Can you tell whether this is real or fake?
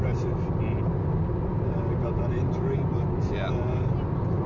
real